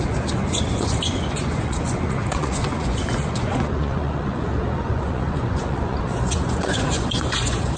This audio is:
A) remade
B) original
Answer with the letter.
A